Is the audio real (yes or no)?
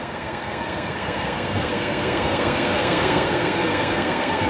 no